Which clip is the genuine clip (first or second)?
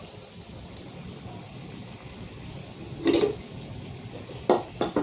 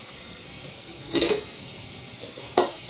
first